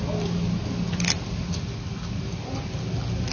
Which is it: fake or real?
real